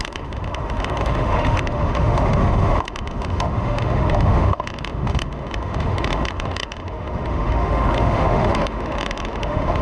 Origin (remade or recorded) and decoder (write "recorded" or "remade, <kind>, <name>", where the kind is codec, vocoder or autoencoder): remade, autoencoder, DAC-VAE